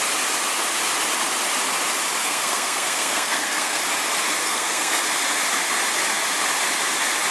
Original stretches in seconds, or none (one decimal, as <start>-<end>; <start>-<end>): 0.0-2.2; 3.8-4.4; 5.0-7.3